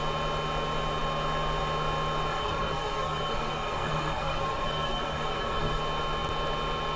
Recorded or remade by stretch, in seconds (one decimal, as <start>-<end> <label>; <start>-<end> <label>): 0.0-2.3 recorded; 2.3-5.8 remade; 5.8-7.0 recorded